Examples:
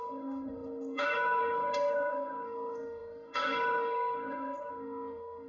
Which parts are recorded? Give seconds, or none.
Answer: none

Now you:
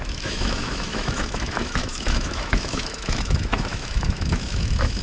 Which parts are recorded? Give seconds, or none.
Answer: none

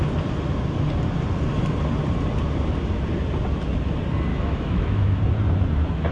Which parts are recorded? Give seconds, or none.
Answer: 0.0-4.3; 5.2-6.1

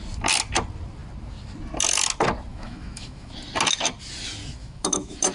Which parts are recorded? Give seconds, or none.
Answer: 0.0-2.5; 3.3-4.6